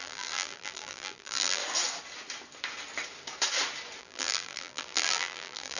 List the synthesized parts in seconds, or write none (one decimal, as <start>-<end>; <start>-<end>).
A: 0.0-1.6; 4.0-5.8